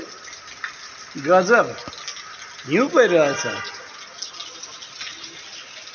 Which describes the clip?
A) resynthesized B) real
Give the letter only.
B